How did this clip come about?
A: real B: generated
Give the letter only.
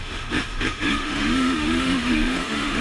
B